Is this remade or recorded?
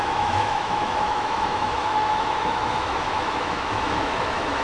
remade